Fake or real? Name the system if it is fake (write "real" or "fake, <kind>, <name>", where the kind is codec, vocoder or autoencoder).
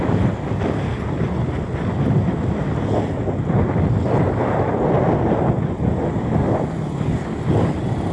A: real